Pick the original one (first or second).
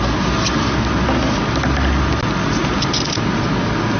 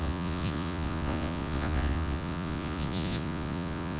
first